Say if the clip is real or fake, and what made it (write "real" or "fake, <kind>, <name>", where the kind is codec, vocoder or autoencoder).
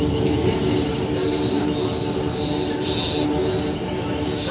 real